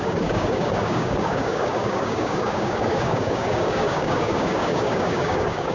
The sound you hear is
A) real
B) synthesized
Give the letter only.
B